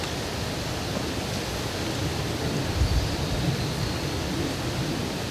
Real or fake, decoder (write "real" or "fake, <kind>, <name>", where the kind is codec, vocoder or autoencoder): real